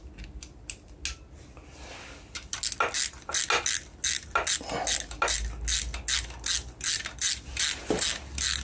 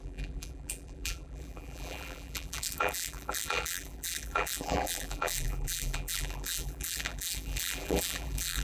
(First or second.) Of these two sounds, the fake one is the second